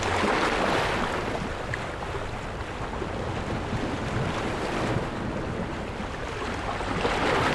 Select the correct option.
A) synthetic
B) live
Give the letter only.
B